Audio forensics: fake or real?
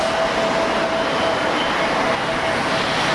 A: real